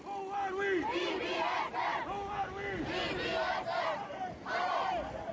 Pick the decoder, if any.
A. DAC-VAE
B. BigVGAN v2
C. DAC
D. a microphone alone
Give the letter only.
D